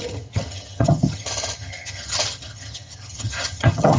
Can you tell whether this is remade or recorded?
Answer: remade